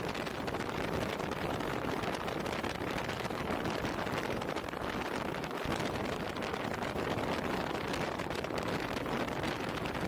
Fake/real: real